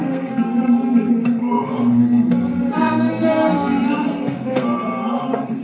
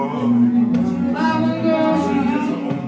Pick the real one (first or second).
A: second